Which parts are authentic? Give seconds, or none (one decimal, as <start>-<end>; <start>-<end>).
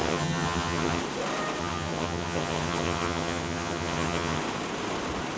1.0-1.6; 4.4-5.4